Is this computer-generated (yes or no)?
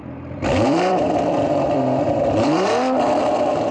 yes